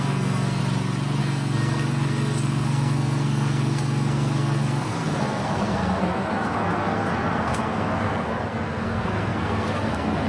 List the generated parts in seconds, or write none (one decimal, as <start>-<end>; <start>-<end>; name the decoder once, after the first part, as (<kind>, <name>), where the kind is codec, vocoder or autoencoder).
0.0-0.6 (codec, SNAC); 1.2-10.3